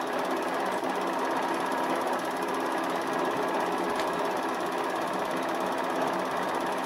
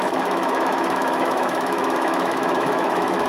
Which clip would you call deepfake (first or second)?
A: second